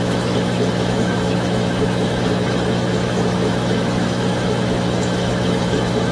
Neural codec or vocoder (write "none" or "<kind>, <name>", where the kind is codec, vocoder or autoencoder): autoencoder, DAC-VAE